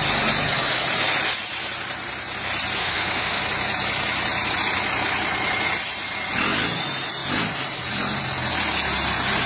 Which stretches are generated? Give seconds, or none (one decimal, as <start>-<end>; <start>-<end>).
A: 2.8-3.4